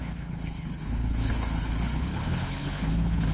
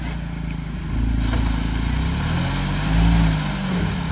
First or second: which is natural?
second